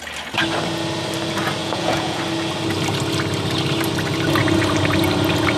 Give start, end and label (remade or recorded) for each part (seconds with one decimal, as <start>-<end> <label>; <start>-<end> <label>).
0.0-1.6 recorded; 1.6-2.2 remade; 2.2-5.6 recorded